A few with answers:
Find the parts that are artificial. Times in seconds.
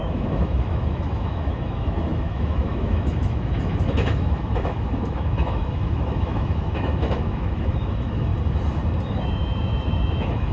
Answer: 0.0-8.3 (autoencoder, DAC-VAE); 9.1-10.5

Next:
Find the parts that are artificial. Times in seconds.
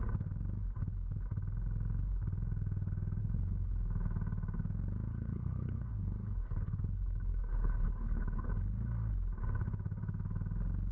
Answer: 3.2-3.7 (codec, HILCodec); 5.1-8.5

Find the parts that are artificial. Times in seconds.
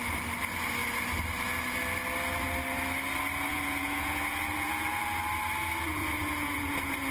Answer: 3.5-5.2 (vocoder, Vocos); 6.0-7.1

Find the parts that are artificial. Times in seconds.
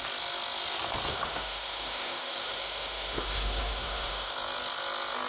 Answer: 1.1-4.3 (autoencoder, DAC-VAE)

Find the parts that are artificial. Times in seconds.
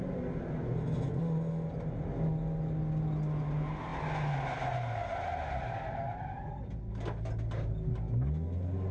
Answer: none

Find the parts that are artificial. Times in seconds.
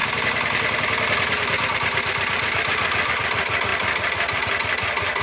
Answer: none